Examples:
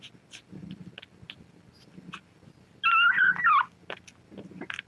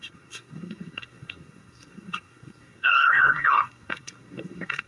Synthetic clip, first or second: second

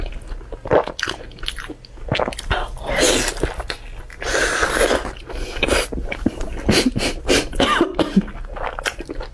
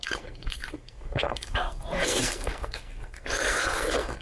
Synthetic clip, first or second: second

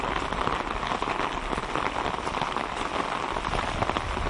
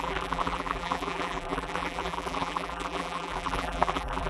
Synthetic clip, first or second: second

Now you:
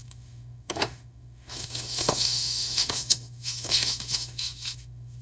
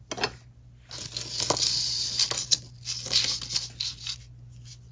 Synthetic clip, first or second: first